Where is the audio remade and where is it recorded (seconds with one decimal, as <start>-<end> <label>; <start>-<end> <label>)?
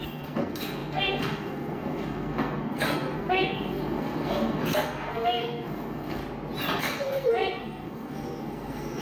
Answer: 0.0-6.2 remade; 6.2-6.8 recorded; 6.8-9.0 remade